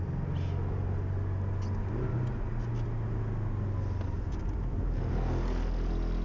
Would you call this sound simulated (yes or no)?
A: no